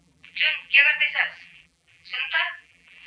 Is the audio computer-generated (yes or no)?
yes